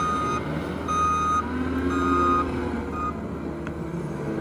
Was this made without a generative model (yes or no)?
yes